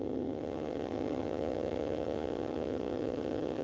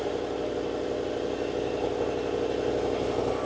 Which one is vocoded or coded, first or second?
first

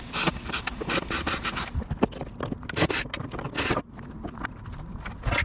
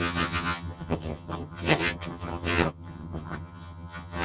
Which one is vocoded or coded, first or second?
second